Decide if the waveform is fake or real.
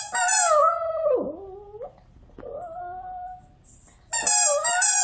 real